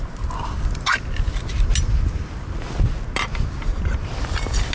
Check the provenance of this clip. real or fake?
real